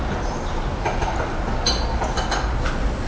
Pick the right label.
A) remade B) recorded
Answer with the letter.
B